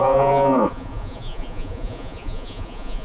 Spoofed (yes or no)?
yes